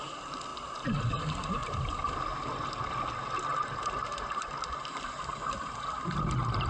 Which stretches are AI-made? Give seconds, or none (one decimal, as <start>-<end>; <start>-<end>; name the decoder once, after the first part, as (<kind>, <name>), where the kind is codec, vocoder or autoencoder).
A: 1.6-2.2 (vocoder, BigVGAN v2); 3.5-4.5